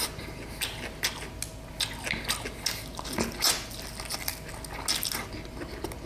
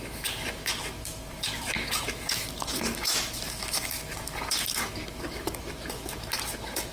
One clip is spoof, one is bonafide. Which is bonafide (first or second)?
first